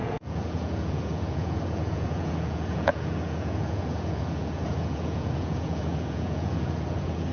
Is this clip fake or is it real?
fake